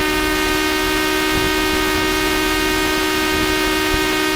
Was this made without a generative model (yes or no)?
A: yes